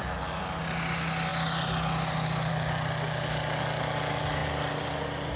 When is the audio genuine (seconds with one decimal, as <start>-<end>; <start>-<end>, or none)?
0.0-5.4